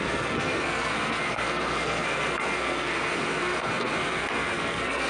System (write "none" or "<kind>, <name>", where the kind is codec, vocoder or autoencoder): codec, SNAC